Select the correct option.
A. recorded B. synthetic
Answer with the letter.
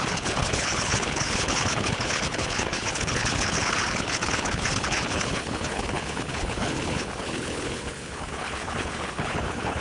B